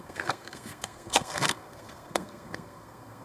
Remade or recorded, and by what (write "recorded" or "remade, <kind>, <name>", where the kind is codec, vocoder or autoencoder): remade, codec, SNAC